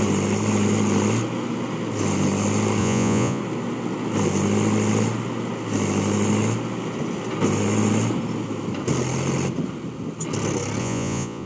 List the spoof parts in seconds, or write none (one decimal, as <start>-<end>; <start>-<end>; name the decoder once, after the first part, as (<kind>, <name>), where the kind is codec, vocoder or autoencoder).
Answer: 2.8-3.4 (vocoder, Vocos); 10.8-11.5